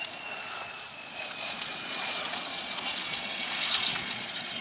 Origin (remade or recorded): remade